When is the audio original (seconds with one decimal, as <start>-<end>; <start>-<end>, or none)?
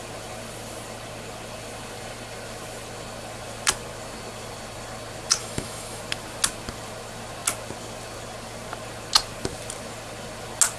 0.0-5.4; 6.0-10.8